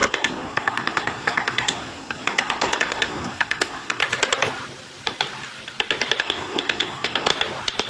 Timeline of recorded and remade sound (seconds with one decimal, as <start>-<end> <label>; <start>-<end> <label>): 0.0-4.0 remade; 4.0-6.2 recorded; 6.2-7.3 remade; 7.3-7.9 recorded

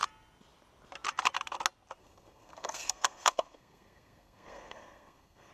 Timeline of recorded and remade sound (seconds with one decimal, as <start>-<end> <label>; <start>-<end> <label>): 0.0-2.0 recorded; 2.0-5.5 remade

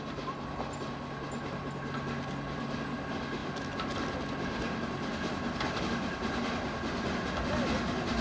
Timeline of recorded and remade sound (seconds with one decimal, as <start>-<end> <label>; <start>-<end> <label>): 0.0-8.2 recorded

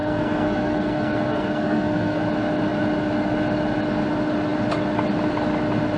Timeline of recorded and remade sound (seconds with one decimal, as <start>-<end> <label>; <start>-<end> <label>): 0.0-2.2 remade; 2.2-6.0 recorded

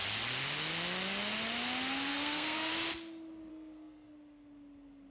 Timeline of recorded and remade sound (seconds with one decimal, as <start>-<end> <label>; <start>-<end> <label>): 0.0-2.1 recorded; 2.1-2.7 remade; 2.7-3.5 recorded; 3.5-4.1 remade; 4.1-5.1 recorded

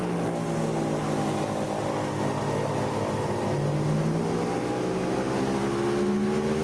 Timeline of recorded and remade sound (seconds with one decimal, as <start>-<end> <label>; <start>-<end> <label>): 0.0-6.6 recorded

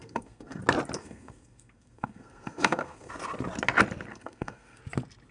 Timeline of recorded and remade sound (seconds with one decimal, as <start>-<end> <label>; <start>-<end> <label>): 0.0-0.6 remade; 0.6-1.0 recorded; 1.0-3.1 remade; 3.1-4.1 recorded; 4.1-4.8 remade; 4.8-5.3 recorded

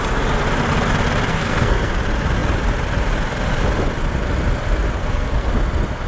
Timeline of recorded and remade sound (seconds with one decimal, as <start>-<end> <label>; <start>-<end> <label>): 0.0-1.3 recorded; 1.3-1.9 remade; 1.9-5.0 recorded; 5.0-5.5 remade; 5.5-6.1 recorded